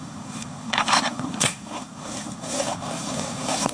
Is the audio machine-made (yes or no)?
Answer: yes